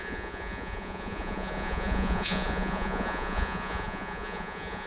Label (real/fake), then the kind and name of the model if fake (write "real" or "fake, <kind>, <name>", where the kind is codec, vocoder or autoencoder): fake, vocoder, Vocos